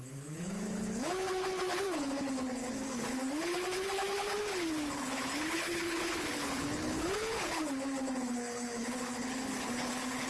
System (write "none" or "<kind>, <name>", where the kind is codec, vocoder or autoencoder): codec, HILCodec